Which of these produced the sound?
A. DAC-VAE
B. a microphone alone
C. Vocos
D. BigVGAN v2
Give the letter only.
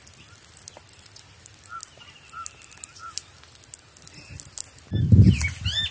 B